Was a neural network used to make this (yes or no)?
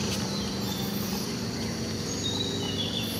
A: yes